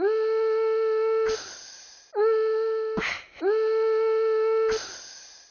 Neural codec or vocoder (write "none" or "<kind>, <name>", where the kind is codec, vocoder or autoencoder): none